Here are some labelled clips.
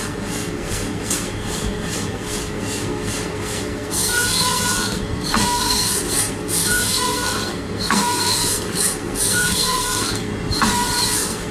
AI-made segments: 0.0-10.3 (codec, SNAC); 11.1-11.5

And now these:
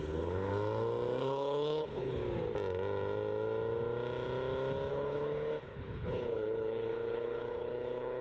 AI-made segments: 0.0-0.5 (codec, HILCodec); 1.2-2.2; 4.9-8.2

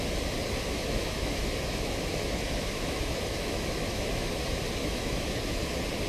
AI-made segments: 0.6-4.3 (autoencoder, DAC-VAE); 4.8-5.3

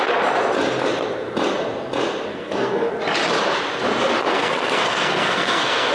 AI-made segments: 2.3-2.9 (codec, SNAC); 4.3-5.9

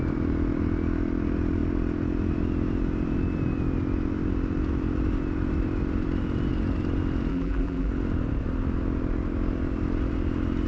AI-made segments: 7.3-7.9 (vocoder, BigVGAN v2)

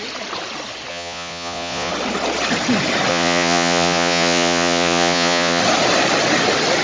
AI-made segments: 0.9-1.9 (vocoder, Vocos); 3.1-5.6

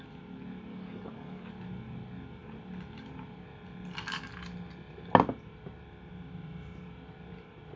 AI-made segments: 0.7-1.5 (codec, DAC)